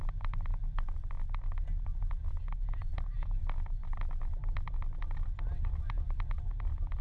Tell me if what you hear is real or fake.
real